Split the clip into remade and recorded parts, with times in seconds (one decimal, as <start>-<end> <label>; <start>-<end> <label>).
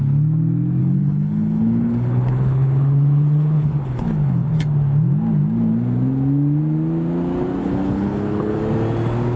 0.0-0.8 recorded; 0.8-4.5 remade; 4.5-7.6 recorded; 7.6-8.6 remade; 8.6-9.4 recorded